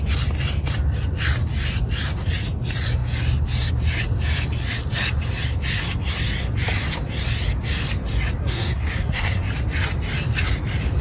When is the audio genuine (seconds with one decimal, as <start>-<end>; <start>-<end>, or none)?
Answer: 0.0-8.4; 9.4-11.0